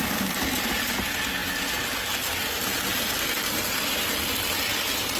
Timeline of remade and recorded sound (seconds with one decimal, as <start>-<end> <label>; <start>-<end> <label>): 0.0-5.2 recorded